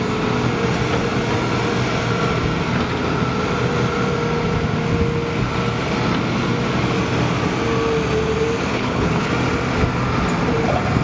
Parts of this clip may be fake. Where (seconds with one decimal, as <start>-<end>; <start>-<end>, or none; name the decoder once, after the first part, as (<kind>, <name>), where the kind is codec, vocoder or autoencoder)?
8.7-9.3 (codec, HILCodec)